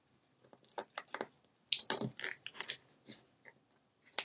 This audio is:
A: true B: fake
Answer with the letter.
A